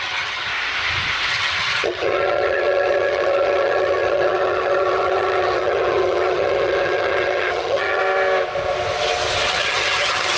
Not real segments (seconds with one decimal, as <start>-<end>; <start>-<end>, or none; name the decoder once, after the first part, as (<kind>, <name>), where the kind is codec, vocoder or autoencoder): 0.0-0.5 (vocoder, HiFi-GAN); 1.3-8.0; 9.5-10.4